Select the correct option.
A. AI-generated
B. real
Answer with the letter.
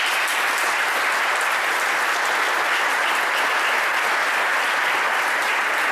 B